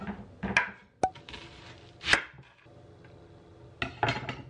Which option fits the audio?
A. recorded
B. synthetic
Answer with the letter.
A